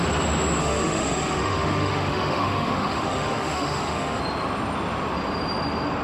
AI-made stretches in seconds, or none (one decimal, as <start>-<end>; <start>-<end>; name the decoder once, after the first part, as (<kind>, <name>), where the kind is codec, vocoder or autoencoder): 0.6-4.2 (autoencoder, DAC-VAE)